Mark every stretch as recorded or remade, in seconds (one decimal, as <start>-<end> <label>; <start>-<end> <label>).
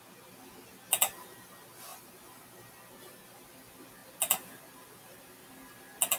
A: 0.0-6.2 recorded